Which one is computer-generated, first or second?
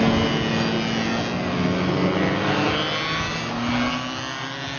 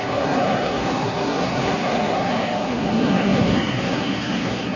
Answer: second